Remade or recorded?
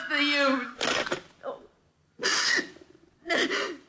recorded